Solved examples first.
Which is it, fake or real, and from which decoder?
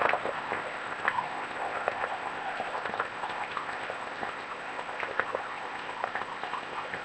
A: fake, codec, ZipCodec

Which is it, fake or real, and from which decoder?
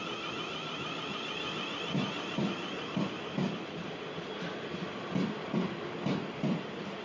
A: real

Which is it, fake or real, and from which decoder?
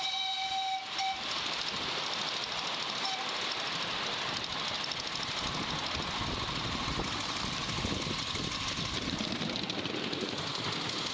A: real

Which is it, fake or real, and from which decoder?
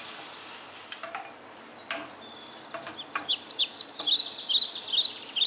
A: real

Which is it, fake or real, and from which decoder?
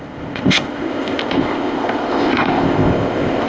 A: fake, codec, ZipCodec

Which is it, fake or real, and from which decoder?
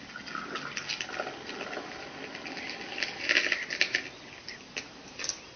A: real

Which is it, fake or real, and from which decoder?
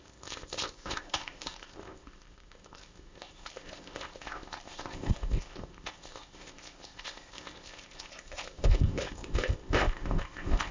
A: fake, codec, ZipCodec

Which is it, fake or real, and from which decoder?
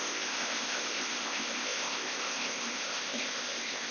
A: fake, codec, ZipCodec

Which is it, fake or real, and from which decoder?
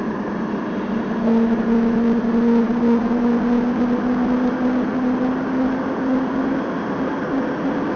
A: real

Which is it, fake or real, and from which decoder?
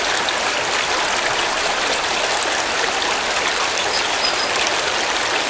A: real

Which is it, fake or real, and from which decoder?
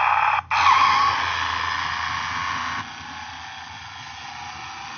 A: real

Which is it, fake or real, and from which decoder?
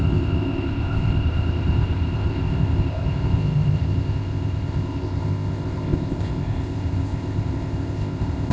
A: fake, codec, ZipCodec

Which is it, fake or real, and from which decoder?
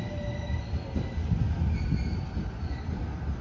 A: real